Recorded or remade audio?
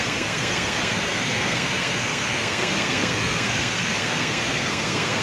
remade